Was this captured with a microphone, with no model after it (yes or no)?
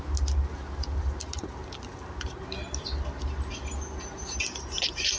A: yes